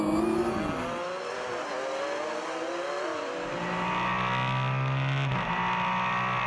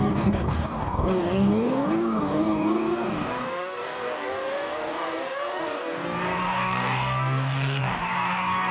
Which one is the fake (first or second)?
second